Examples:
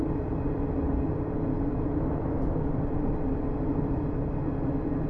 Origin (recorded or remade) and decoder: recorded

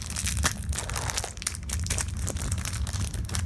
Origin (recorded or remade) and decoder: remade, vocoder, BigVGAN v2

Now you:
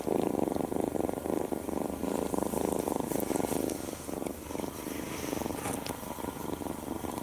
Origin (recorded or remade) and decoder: recorded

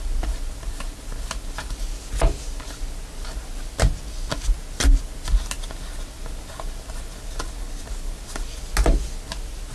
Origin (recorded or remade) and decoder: recorded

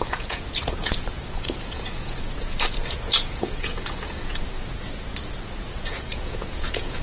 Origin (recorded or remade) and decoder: remade, vocoder, Vocos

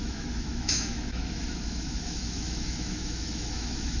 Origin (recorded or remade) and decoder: remade, autoencoder, DAC-VAE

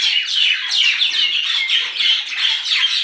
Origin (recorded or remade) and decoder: recorded